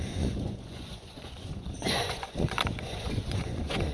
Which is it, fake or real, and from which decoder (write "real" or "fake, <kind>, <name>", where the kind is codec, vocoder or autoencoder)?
fake, vocoder, Vocos